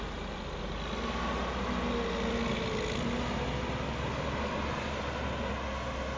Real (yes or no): yes